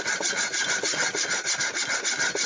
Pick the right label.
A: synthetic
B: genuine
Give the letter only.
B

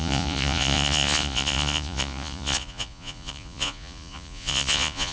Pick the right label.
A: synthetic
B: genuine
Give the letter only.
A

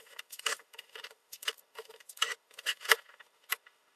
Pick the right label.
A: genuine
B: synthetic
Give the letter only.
B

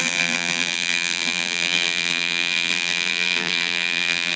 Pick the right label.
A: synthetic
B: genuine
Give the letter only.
A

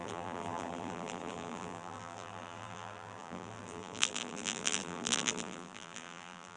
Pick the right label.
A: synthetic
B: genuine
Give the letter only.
A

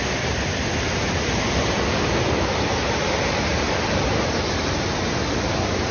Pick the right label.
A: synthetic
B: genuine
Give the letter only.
B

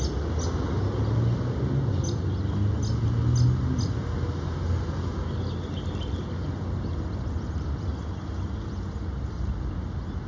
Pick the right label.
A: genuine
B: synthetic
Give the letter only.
A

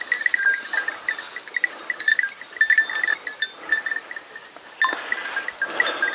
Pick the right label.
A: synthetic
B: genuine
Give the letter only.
B